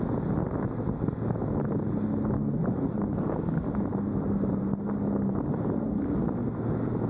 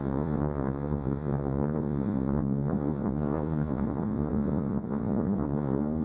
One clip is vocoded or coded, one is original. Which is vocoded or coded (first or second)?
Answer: second